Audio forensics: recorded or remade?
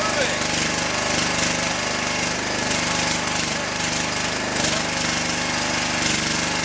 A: recorded